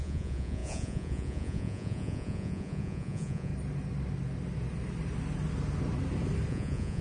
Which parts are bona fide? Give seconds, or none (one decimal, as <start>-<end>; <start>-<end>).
3.5-6.5